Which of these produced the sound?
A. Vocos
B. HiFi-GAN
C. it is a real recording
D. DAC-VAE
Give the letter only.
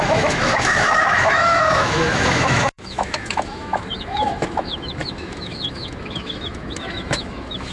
D